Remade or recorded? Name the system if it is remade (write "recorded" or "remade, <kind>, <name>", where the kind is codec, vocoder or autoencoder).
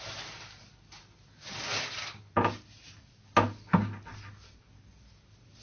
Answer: recorded